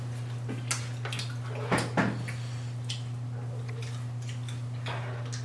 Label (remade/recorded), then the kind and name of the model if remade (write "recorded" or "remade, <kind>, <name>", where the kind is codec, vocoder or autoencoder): recorded